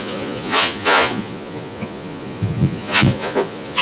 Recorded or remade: remade